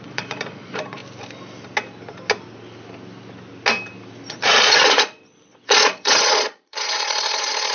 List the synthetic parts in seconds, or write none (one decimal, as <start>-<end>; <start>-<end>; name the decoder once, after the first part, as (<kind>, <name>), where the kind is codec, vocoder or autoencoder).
0.0-1.0 (vocoder, Vocos); 4.3-7.7

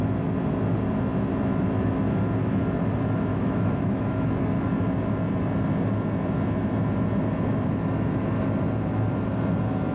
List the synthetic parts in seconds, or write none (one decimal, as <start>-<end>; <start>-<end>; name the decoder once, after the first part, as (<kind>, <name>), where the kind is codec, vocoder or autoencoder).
3.3-4.3 (autoencoder, DAC-VAE)